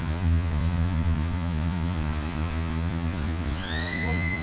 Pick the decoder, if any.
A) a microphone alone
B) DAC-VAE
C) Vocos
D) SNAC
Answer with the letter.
C